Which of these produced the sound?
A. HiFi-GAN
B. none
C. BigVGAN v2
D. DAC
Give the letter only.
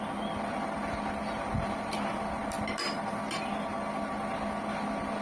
B